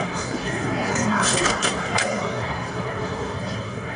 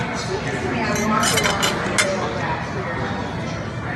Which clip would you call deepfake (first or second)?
first